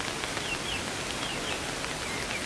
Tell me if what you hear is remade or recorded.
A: recorded